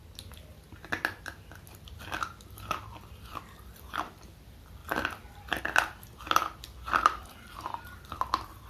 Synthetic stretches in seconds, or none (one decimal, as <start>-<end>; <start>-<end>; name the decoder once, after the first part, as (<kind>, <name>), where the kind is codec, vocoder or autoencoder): 2.9-4.8 (vocoder, BigVGAN v2); 5.6-8.7